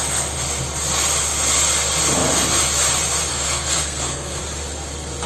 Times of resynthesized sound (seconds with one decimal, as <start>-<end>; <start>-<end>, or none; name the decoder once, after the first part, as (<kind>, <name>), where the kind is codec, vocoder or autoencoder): 3.3-4.4 (codec, SNAC)